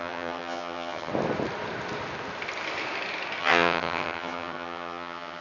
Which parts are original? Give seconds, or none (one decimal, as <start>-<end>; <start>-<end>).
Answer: 1.1-3.4

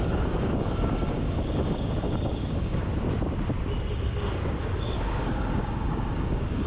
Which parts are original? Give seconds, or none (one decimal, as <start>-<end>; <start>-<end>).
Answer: 2.9-3.9

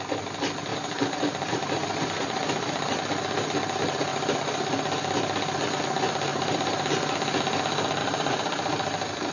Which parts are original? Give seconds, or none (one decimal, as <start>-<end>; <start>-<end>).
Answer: 0.0-0.7; 2.9-6.3; 6.9-8.0